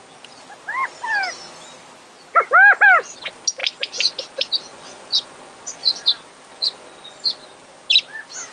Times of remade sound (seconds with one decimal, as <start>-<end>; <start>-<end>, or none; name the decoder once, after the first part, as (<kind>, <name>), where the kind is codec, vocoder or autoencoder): 3.6-4.2 (vocoder, Vocos); 4.7-6.1; 6.5-7.3